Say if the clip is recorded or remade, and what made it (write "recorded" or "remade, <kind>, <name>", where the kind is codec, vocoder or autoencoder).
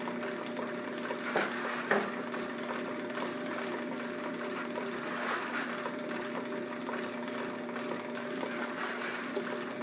recorded